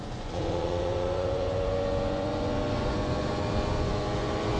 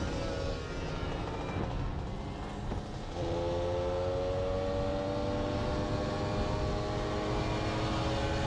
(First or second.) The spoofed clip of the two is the first